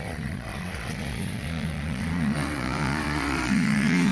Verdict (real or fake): fake